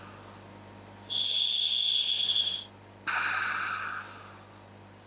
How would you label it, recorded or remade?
recorded